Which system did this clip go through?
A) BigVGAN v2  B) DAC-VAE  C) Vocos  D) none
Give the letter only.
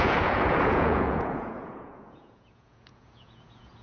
C